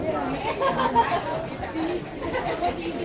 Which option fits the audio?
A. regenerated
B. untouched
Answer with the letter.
B